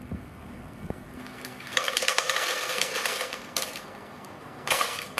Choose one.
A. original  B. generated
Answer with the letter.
B